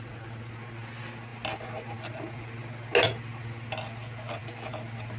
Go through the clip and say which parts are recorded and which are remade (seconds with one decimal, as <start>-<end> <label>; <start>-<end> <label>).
0.0-5.2 recorded